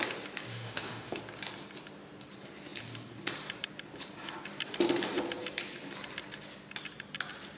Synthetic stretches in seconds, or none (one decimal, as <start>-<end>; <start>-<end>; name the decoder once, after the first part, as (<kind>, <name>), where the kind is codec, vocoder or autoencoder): 0.5-1.2 (autoencoder, DAC-VAE)